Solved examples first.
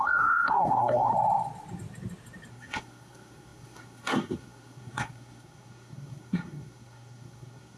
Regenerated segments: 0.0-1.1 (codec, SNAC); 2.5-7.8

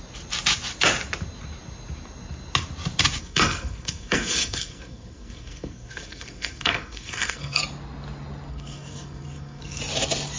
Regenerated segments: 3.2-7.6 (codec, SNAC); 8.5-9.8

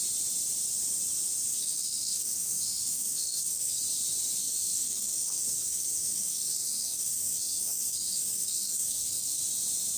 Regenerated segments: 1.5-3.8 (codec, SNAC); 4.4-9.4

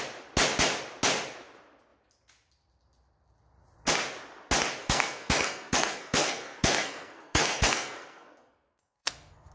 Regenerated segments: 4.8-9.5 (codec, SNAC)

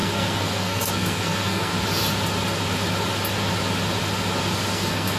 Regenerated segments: 0.0-1.7 (codec, SNAC); 4.7-5.2

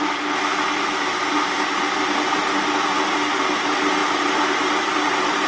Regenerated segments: none